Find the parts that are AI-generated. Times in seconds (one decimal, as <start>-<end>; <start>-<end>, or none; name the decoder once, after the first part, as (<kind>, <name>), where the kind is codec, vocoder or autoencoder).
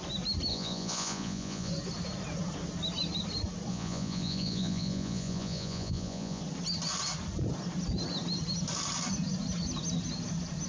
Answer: 0.5-1.7 (vocoder, Vocos); 3.7-6.4